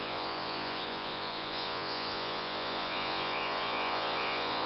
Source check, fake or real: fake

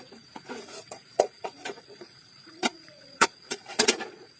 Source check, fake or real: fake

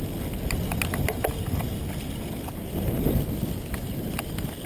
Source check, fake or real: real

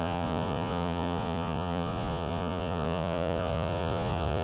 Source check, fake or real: fake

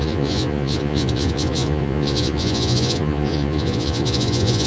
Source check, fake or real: fake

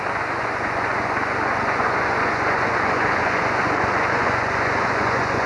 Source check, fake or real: fake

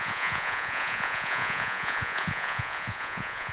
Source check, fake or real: fake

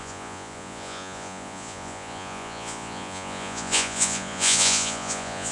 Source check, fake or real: fake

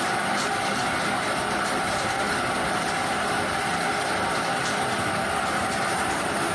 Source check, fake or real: real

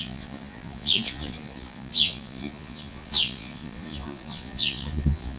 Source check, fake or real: fake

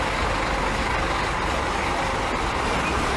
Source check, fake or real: real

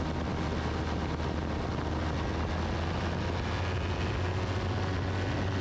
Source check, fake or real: real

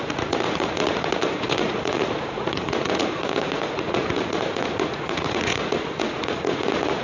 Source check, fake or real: fake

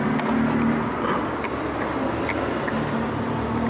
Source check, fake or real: real